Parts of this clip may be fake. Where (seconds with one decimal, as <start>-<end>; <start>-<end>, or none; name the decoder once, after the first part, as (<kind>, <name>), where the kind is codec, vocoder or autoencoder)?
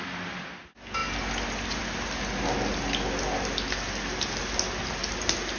none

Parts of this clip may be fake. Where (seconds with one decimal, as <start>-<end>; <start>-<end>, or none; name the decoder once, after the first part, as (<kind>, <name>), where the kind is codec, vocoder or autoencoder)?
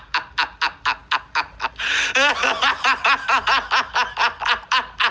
none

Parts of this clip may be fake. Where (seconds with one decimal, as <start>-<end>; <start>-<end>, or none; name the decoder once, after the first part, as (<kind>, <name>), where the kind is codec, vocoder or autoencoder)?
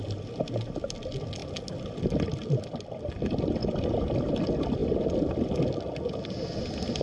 none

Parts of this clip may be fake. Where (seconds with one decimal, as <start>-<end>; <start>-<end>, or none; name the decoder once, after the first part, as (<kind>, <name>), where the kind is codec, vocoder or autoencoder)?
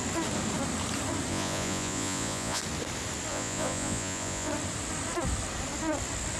1.3-2.6 (vocoder, Vocos); 3.3-4.5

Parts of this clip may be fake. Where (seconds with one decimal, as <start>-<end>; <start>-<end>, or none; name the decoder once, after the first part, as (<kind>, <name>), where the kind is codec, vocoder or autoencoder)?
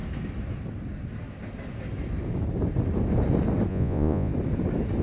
3.7-4.3 (vocoder, Vocos)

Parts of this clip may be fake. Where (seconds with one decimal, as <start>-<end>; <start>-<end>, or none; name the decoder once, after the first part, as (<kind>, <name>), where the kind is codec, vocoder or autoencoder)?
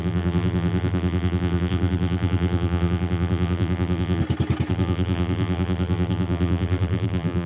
0.0-4.2 (vocoder, BigVGAN v2); 4.7-7.5